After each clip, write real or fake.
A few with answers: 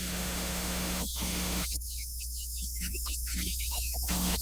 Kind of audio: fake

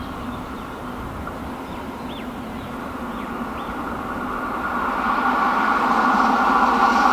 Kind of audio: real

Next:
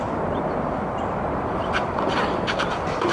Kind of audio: fake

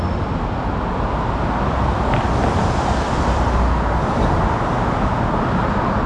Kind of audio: real